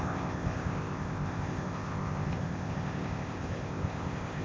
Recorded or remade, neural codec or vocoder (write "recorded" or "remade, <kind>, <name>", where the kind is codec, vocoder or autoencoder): remade, codec, ZipCodec